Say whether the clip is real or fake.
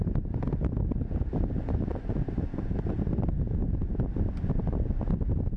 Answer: real